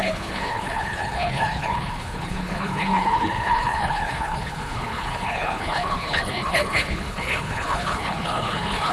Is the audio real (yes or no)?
no